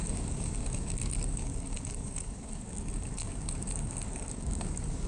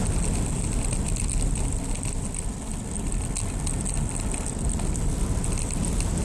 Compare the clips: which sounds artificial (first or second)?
first